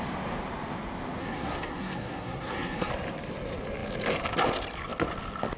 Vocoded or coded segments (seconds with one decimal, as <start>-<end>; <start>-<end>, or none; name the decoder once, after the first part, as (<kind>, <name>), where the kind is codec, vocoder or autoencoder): 1.2-2.9 (codec, SNAC)